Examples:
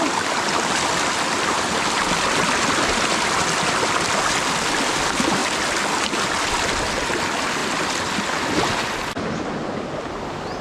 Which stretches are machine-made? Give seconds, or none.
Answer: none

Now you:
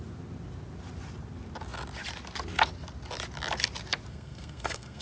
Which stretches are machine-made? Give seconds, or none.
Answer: 4.1-5.0 (codec, SNAC)

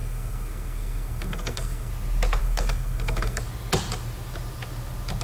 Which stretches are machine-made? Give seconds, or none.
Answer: 0.0-1.9 (codec, SNAC); 2.4-3.4